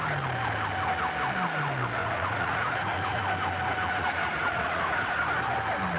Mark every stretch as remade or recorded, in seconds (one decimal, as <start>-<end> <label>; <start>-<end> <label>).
0.0-2.0 recorded; 2.0-3.2 remade; 3.2-4.0 recorded; 4.0-5.2 remade; 5.2-6.0 recorded

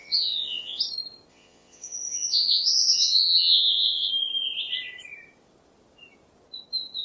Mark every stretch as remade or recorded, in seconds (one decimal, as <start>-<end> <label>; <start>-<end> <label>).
0.0-0.8 remade; 0.8-1.3 recorded; 1.3-4.1 remade; 4.1-7.0 recorded

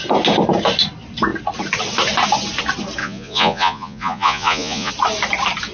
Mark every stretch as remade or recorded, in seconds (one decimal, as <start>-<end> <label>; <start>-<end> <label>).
0.0-3.0 recorded; 3.0-4.9 remade; 4.9-5.7 recorded

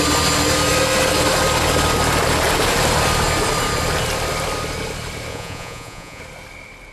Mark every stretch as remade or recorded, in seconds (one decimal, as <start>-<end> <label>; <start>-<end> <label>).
0.0-5.3 recorded; 5.3-6.2 remade; 6.2-6.9 recorded

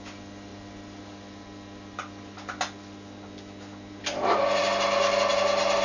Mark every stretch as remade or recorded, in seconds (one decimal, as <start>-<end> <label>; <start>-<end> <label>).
0.0-5.8 recorded